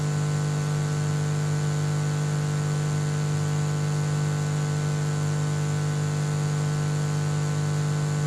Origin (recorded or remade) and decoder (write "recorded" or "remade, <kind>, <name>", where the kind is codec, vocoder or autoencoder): recorded